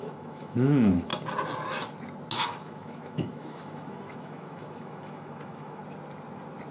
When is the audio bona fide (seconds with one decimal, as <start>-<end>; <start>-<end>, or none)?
1.1-2.5; 5.8-6.7